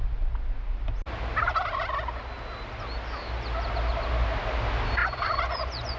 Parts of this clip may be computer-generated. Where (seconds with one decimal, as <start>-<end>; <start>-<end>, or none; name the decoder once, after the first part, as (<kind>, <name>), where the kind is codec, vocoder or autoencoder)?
5.0-6.0 (vocoder, Vocos)